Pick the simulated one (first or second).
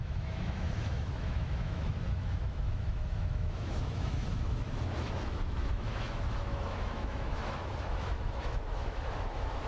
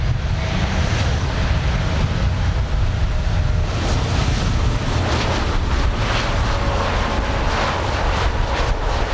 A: first